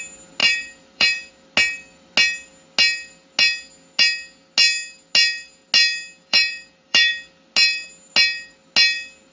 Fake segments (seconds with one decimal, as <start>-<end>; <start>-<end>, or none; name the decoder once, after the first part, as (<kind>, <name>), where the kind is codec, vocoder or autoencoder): 0.4-1.3 (vocoder, BigVGAN v2); 6.2-7.1